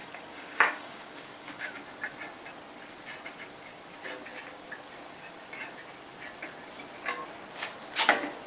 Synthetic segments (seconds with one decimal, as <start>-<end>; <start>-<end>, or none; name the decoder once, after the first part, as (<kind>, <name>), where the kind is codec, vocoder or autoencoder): 0.0-1.8 (codec, DAC)